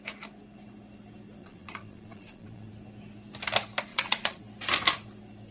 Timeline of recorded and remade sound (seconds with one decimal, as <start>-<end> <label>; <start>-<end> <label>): 0.0-1.4 recorded; 1.4-2.7 remade; 2.7-3.9 recorded; 3.9-4.4 remade; 4.4-5.5 recorded